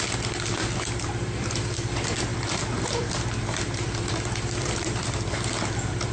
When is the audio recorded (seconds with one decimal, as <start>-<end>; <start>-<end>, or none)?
none